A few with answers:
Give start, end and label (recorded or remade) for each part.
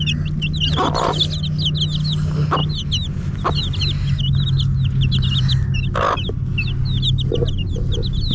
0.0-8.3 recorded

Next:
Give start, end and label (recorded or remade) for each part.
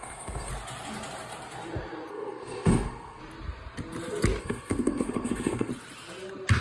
0.0-0.5 remade; 0.5-2.1 recorded; 2.1-3.2 remade; 3.2-4.4 recorded; 4.4-5.7 remade; 5.7-6.6 recorded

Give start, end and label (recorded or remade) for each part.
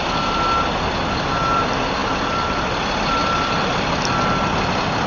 0.0-5.1 recorded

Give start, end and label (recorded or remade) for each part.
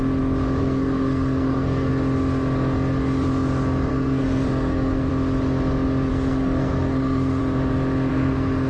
0.0-0.6 recorded; 0.6-1.9 remade; 1.9-3.9 recorded; 3.9-5.1 remade; 5.1-6.1 recorded; 6.1-7.4 remade; 7.4-8.1 recorded; 8.1-8.7 remade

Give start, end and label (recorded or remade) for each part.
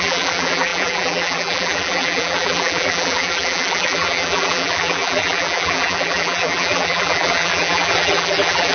0.0-8.7 remade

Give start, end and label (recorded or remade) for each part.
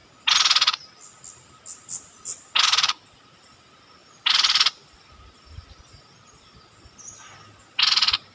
0.0-4.0 recorded; 4.0-5.8 remade; 5.8-8.3 recorded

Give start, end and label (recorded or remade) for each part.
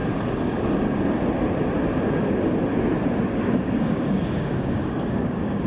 0.0-3.4 recorded; 3.4-5.7 remade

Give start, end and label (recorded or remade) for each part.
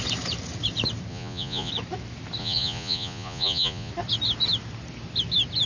0.0-1.1 recorded; 1.1-1.7 remade; 1.7-2.4 recorded; 2.4-3.9 remade; 3.9-5.7 recorded